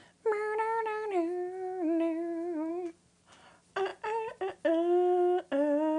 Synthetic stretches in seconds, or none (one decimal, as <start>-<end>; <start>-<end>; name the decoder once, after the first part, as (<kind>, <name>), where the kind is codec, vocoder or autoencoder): none